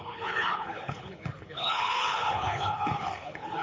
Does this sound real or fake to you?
fake